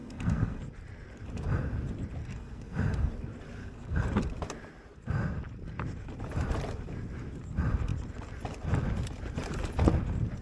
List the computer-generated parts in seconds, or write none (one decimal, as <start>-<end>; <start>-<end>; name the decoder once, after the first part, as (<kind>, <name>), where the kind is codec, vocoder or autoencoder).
0.0-0.6 (codec, SNAC); 2.2-3.1; 3.6-4.1